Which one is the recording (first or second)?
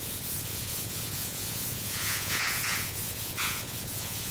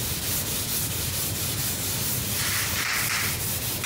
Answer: second